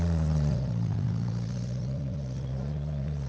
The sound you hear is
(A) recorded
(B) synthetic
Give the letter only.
B